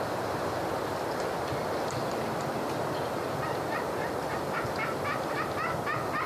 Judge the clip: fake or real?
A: real